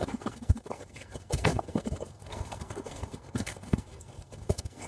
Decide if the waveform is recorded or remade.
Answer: remade